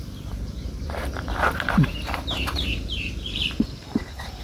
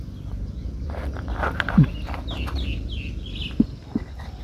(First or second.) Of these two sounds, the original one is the second